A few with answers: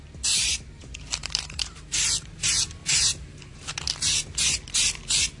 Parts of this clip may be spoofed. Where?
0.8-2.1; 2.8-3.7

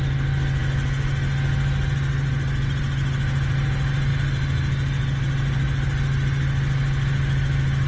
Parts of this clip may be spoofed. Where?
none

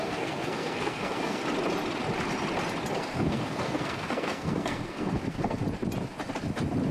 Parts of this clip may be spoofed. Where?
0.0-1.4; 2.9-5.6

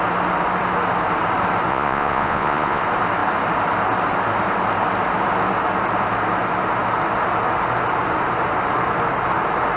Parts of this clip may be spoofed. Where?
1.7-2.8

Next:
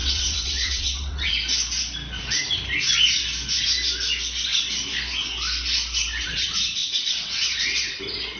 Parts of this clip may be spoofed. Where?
0.0-1.3; 6.8-8.0

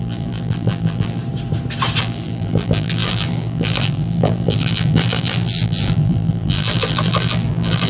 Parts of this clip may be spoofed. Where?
0.0-1.2; 2.0-7.9